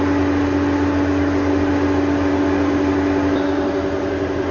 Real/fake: real